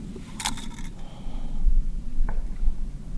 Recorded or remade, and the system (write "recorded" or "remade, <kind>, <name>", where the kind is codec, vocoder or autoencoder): recorded